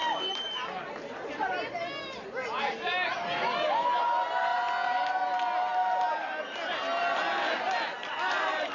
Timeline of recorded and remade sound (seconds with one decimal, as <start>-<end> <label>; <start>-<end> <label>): 0.0-8.7 recorded